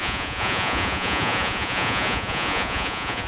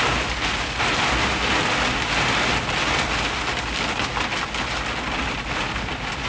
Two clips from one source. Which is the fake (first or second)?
first